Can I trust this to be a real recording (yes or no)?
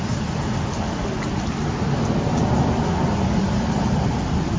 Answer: yes